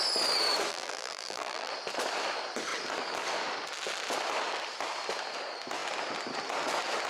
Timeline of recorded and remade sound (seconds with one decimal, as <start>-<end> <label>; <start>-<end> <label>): 0.0-0.7 recorded; 0.7-1.7 remade; 1.7-7.1 recorded